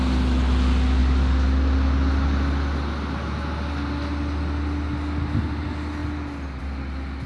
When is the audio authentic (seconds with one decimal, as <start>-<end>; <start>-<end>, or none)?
0.0-7.3